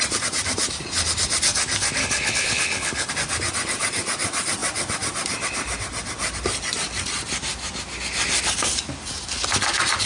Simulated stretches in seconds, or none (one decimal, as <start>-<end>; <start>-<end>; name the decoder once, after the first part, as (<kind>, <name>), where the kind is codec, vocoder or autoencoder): 2.0-3.1 (codec, HILCodec)